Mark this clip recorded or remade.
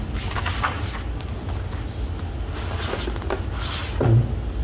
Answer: recorded